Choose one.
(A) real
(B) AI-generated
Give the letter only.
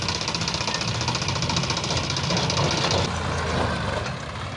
A